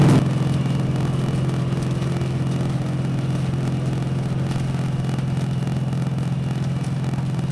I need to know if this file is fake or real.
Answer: real